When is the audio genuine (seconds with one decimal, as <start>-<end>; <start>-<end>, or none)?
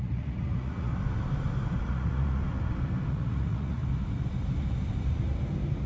0.9-1.8; 2.4-3.1; 3.8-5.9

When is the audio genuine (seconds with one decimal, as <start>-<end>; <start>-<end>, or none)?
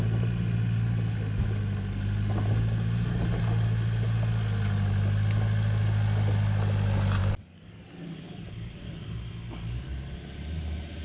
0.0-11.0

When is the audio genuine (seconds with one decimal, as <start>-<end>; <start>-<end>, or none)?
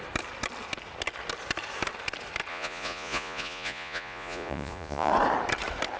0.0-2.5; 5.1-6.0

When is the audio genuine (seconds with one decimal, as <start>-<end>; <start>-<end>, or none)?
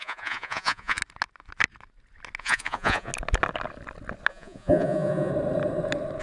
1.0-2.4; 3.1-4.3; 5.3-6.2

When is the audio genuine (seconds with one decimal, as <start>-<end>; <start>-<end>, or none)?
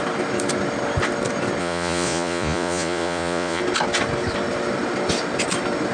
0.0-1.6; 3.6-5.9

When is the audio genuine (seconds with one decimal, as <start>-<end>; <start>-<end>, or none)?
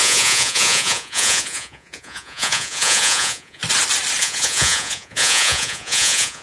3.6-4.2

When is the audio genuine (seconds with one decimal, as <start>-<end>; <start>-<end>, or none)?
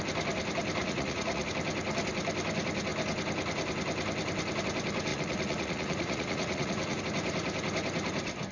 0.0-0.8; 1.5-5.1; 7.0-8.5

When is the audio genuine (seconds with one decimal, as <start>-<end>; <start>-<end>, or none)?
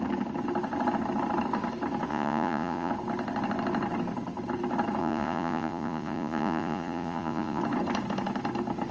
0.0-2.1; 2.9-5.0; 7.6-8.9